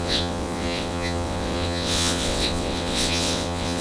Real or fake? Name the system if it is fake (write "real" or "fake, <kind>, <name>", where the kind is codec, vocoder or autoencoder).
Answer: fake, vocoder, WaveNeXt